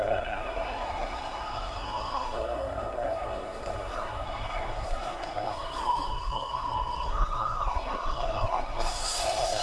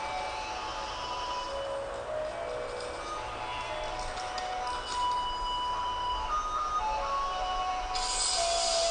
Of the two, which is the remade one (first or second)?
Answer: first